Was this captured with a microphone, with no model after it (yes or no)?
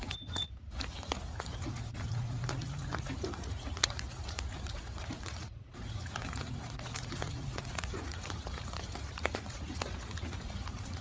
no